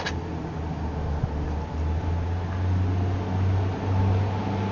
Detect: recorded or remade recorded